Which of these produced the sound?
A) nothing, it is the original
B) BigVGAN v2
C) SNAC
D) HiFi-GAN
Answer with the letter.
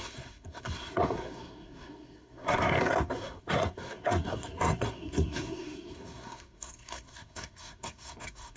C